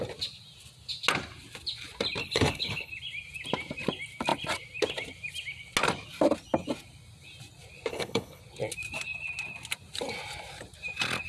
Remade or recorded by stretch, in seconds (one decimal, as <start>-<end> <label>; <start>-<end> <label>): 0.0-2.2 recorded; 2.2-2.9 remade; 2.9-7.9 recorded; 7.9-8.4 remade; 8.4-11.3 recorded

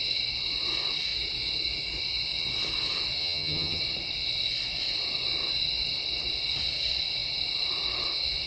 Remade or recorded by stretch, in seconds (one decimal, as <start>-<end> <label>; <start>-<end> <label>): 0.0-3.2 recorded; 3.2-3.8 remade; 3.8-8.5 recorded

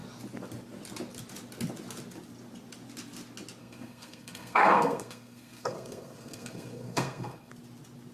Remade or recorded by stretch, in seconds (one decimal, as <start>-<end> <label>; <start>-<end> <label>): 0.0-3.6 recorded; 3.6-7.5 remade; 7.5-8.1 recorded

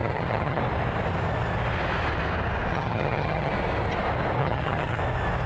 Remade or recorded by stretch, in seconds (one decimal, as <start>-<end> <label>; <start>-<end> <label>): 0.0-0.6 remade; 0.6-2.7 recorded; 2.7-3.5 remade; 3.5-4.4 recorded; 4.4-5.0 remade; 5.0-5.5 recorded